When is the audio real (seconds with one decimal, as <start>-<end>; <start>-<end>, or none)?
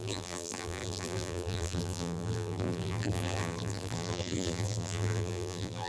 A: none